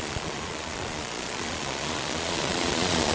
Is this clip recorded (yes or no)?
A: no